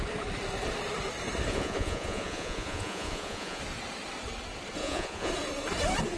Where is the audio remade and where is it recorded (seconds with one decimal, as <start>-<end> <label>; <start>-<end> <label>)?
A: 0.0-1.5 recorded; 1.5-3.6 remade; 3.6-4.8 recorded; 4.8-5.3 remade; 5.3-6.2 recorded